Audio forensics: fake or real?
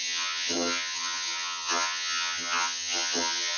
fake